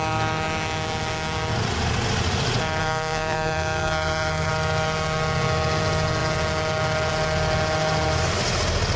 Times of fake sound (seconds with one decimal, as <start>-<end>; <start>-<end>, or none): 2.8-4.5